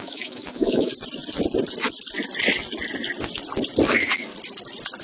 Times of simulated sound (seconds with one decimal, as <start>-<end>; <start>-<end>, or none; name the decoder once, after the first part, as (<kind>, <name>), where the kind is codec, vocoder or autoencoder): 0.0-0.9 (autoencoder, DAC-VAE); 3.9-4.3